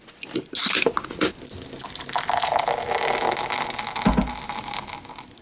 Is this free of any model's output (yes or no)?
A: yes